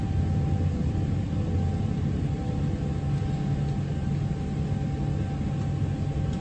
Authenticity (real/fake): real